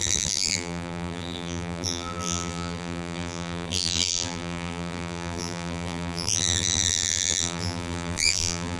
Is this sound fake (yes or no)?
yes